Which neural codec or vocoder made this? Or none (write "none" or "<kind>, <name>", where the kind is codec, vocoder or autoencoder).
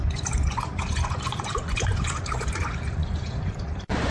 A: vocoder, Vocos